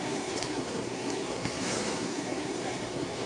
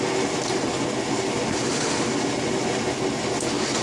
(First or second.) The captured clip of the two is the second